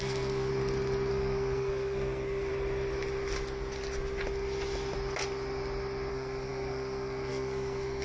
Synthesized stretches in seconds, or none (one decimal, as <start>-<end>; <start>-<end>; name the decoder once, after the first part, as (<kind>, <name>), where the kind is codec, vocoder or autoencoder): 0.0-0.5 (codec, SNAC); 1.1-2.5; 6.1-8.0